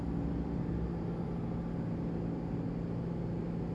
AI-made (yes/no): no